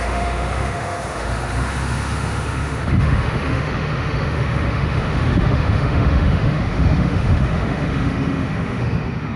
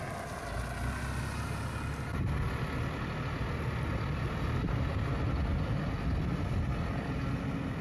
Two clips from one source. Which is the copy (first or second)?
first